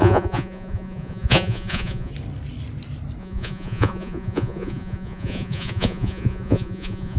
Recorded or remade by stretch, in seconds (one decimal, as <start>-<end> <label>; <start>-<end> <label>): 0.0-2.1 remade; 2.1-3.2 recorded; 3.2-7.2 remade